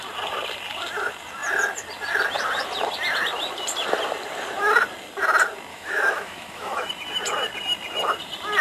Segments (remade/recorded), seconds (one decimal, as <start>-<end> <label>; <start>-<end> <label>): 0.0-5.7 recorded; 5.7-6.9 remade; 6.9-8.6 recorded